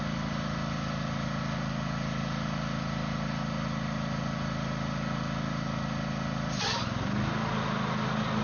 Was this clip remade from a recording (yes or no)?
no